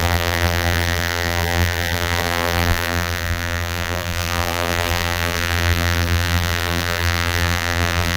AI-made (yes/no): yes